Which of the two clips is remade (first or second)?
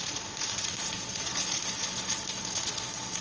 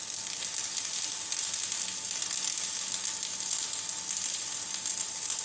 first